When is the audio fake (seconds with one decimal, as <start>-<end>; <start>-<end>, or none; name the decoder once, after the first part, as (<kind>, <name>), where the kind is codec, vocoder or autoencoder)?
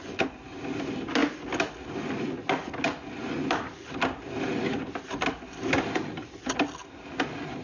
none